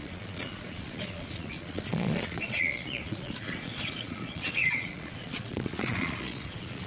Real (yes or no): no